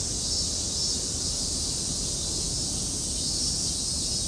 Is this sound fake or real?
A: real